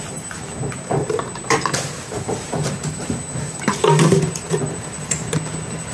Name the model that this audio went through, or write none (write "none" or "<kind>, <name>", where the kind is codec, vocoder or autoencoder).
vocoder, BigVGAN v2